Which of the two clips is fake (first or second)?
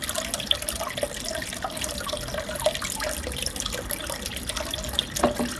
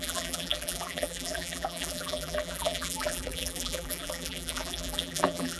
second